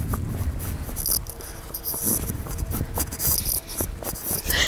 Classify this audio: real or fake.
real